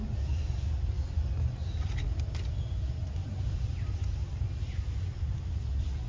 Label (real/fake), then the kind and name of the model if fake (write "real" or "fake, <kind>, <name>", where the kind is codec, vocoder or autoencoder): real